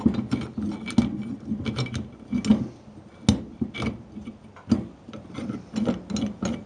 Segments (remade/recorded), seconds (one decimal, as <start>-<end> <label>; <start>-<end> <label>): 0.0-6.7 recorded